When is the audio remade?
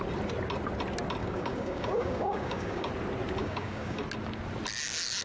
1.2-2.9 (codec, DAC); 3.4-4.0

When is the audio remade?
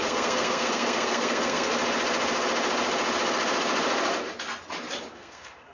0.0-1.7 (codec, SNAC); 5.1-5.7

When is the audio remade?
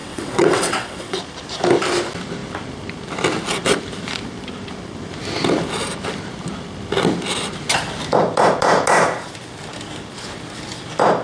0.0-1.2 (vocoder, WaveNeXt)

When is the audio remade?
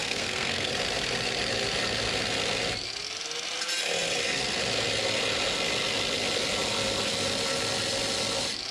0.0-0.7 (codec, SNAC)